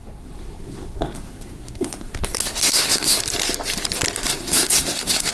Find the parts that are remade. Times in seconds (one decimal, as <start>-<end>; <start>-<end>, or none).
0.0-3.2; 4.3-5.3